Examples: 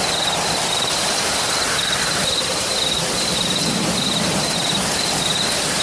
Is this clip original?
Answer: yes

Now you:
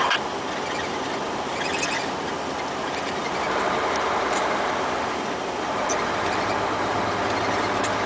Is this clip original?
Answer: yes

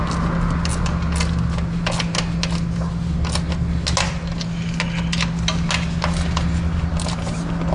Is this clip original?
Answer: yes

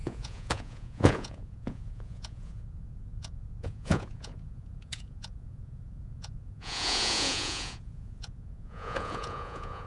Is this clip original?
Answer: no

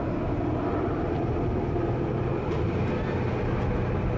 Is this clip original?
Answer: yes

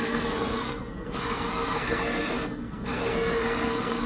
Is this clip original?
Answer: no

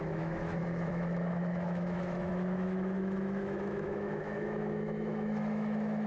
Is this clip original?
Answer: no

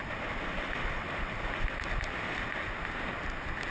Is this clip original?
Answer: yes